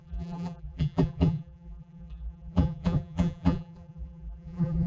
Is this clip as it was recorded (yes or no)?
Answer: no